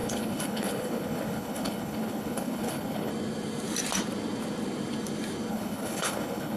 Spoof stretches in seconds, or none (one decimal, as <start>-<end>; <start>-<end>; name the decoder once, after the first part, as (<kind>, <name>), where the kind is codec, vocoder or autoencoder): 0.0-3.1 (codec, HILCodec); 5.5-6.6